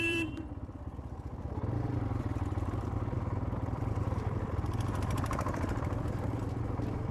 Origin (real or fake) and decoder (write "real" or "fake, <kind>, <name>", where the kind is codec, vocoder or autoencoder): fake, vocoder, BigVGAN v2